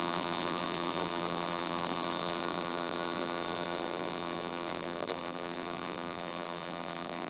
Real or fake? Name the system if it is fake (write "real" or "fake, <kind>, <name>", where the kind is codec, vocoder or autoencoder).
fake, vocoder, BigVGAN v2